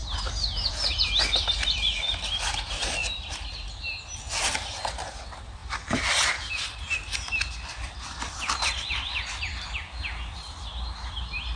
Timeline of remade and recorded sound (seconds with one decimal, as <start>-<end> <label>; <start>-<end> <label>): 0.0-11.6 recorded